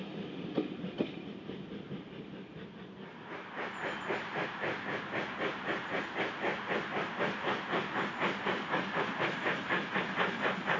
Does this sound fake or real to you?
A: real